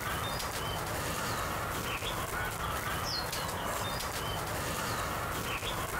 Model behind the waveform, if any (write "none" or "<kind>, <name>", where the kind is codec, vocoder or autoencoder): none